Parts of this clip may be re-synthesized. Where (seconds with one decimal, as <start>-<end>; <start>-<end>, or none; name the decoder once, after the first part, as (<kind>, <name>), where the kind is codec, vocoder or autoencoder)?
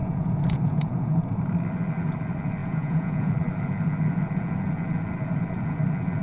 0.0-1.3 (vocoder, Vocos); 2.6-3.3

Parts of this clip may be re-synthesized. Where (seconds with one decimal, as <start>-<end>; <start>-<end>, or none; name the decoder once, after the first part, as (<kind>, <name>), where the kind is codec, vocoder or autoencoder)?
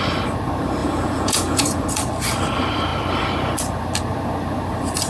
0.8-1.8 (vocoder, Vocos)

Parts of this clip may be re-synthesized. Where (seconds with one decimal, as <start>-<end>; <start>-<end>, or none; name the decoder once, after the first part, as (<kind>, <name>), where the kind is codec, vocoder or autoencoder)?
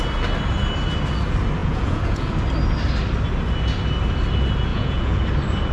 1.6-2.4 (vocoder, Vocos); 4.7-5.2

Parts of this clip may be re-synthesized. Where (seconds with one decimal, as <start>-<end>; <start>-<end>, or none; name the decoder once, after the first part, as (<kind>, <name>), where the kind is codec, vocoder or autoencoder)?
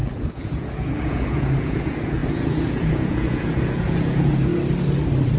0.0-4.5 (vocoder, Vocos)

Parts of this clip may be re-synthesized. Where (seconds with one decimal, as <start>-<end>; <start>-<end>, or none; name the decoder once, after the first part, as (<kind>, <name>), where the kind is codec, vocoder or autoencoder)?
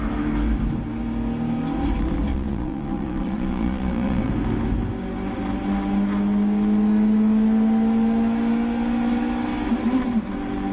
2.3-4.3 (vocoder, Vocos)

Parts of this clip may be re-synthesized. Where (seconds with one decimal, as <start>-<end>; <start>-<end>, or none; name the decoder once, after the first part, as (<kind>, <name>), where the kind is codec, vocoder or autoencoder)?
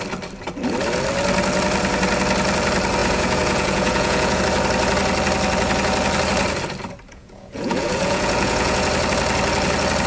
3.0-4.4 (vocoder, Vocos); 7.1-8.9